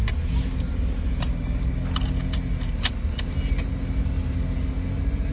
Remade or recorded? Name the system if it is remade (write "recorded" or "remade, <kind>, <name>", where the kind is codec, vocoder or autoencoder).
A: recorded